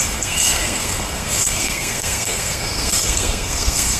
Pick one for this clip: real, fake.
fake